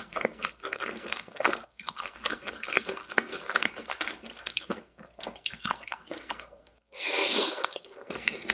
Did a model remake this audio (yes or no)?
yes